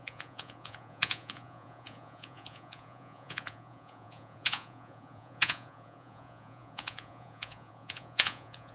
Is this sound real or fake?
fake